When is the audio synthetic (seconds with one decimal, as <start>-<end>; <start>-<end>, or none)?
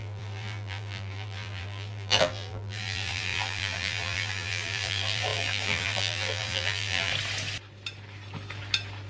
0.0-7.1